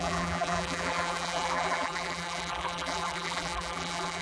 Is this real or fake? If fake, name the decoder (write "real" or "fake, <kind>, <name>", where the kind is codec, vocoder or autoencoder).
fake, vocoder, BigVGAN v2